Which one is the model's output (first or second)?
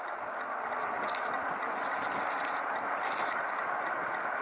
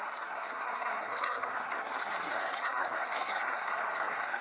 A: second